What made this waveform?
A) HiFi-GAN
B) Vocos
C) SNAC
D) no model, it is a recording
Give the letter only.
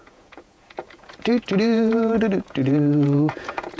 B